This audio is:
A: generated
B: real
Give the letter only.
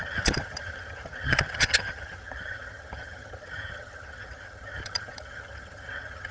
A